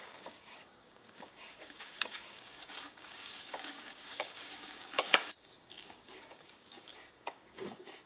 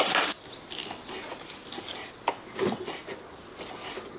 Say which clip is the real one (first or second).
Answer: second